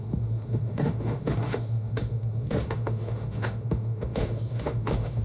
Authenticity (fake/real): fake